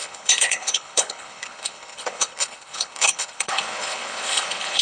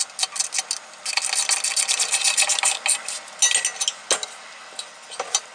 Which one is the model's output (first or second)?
first